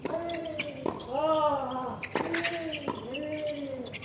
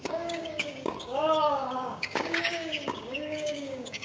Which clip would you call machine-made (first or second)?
second